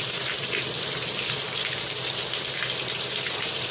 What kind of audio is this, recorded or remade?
remade